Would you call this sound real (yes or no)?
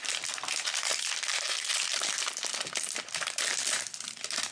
yes